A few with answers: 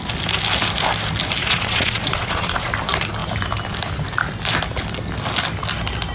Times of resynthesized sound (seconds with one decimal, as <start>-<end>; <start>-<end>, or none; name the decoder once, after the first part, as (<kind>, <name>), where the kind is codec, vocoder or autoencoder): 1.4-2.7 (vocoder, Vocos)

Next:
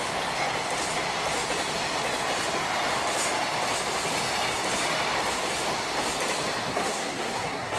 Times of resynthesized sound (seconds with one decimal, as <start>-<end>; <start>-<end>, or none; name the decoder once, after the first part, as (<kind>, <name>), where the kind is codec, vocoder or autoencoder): 6.7-7.8 (codec, SNAC)

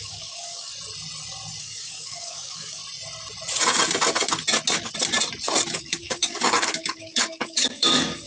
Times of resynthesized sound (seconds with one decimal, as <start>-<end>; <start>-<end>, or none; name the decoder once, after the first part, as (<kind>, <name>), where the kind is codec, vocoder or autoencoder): 0.0-0.7 (codec, DAC); 1.6-2.8; 5.7-8.3

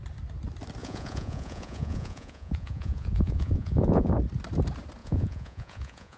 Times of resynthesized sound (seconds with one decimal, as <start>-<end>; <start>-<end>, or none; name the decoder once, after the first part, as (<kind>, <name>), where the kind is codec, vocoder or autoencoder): 0.8-4.1 (vocoder, Vocos); 5.0-6.2

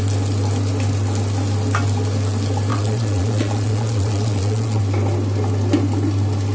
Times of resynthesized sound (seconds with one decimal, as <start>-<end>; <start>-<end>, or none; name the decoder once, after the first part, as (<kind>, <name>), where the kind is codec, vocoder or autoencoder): 2.7-4.8 (vocoder, Vocos)

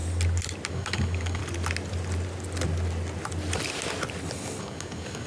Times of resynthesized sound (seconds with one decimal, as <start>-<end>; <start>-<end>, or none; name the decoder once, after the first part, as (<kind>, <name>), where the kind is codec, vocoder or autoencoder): 0.7-1.4 (codec, DAC); 4.6-5.3

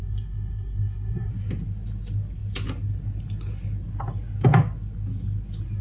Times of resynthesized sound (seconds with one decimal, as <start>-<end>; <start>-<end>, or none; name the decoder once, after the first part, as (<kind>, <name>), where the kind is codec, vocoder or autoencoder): 0.0-1.3 (codec, SNAC)